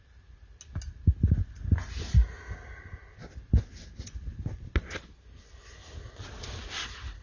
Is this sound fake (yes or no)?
no